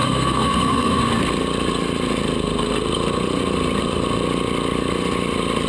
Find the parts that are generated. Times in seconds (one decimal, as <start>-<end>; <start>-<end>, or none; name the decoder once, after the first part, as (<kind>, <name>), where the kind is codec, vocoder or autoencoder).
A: 0.0-1.0 (codec, SNAC)